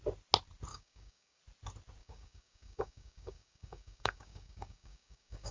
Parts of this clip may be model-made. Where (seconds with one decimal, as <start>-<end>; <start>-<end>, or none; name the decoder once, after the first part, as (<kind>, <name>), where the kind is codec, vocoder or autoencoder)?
0.7-1.4 (codec, DAC); 2.0-5.5